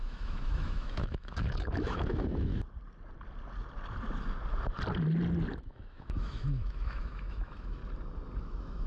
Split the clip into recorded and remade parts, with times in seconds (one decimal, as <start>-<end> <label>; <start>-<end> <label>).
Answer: 0.0-2.5 remade; 2.5-5.6 recorded; 5.6-7.8 remade; 7.8-8.4 recorded; 8.4-8.9 remade